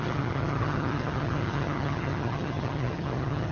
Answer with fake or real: fake